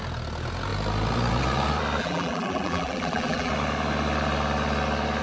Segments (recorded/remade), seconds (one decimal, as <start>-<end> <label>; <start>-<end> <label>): 0.0-2.0 recorded; 2.0-3.5 remade; 3.5-5.2 recorded